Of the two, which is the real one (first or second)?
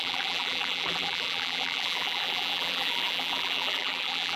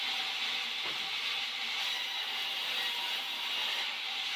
second